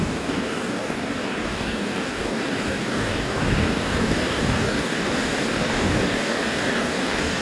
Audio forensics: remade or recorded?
remade